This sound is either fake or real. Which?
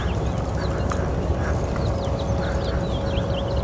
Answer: real